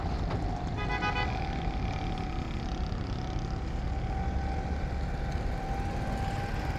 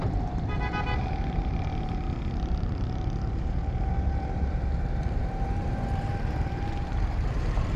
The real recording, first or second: first